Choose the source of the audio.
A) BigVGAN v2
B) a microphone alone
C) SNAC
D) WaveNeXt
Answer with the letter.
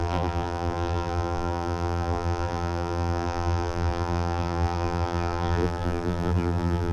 A